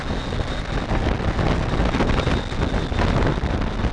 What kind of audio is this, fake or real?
real